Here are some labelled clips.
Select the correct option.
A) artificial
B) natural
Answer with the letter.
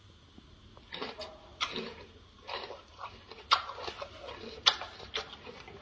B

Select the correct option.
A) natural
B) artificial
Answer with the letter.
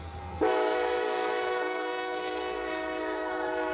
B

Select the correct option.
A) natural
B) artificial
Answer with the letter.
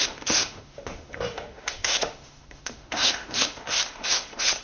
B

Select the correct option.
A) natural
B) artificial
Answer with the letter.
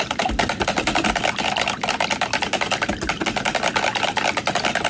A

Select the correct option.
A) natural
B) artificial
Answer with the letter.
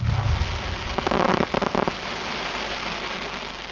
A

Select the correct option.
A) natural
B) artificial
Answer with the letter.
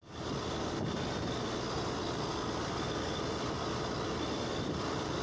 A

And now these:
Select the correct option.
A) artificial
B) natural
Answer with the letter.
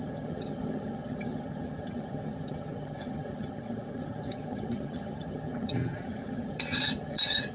A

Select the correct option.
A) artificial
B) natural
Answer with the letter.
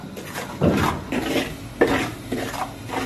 B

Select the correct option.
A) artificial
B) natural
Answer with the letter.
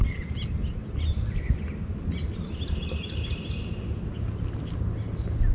B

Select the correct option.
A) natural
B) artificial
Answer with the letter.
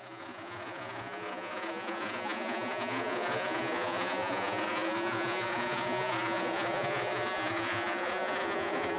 B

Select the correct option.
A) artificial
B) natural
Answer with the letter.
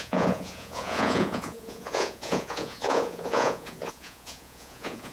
A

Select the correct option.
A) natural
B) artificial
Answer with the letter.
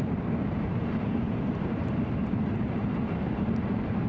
B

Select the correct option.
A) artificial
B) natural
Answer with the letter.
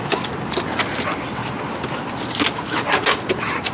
B